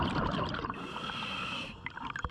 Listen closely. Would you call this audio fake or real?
real